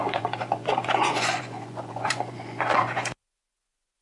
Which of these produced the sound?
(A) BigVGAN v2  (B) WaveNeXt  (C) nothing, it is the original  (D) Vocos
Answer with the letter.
D